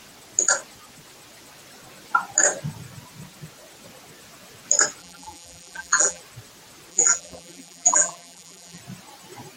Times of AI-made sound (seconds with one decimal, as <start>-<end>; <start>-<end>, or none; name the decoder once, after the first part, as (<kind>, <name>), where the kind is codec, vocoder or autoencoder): 5.0-6.2 (vocoder, BigVGAN v2); 6.9-8.8